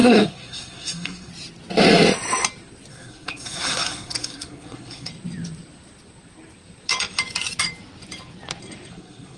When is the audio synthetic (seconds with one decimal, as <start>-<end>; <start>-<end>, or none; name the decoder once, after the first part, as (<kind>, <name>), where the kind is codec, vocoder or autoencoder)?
0.0-1.3 (codec, SNAC); 2.9-5.1; 8.9-9.4